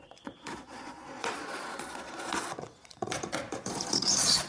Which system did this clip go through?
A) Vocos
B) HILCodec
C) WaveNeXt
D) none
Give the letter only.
A